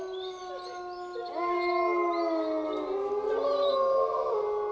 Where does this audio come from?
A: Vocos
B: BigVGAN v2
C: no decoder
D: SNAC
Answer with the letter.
C